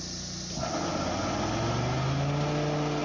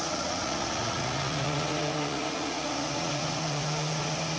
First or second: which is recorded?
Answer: first